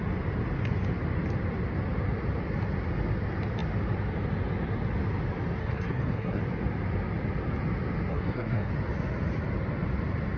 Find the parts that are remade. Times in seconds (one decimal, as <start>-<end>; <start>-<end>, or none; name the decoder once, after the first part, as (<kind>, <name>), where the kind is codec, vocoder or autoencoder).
5.6-6.4 (codec, SNAC); 8.1-8.7

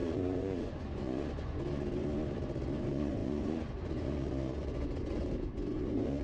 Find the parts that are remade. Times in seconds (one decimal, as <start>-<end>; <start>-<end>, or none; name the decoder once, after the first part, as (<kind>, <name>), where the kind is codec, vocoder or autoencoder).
0.0-2.0 (vocoder, Vocos); 2.8-6.2

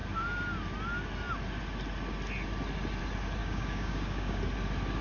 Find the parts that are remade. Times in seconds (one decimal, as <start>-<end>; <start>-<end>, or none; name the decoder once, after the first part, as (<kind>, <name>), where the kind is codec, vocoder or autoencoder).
3.4-4.4 (codec, DAC)